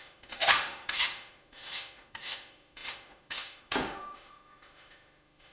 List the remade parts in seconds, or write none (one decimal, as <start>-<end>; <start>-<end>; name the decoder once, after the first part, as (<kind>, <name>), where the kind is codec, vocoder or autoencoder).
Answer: 0.0-5.5 (autoencoder, DAC-VAE)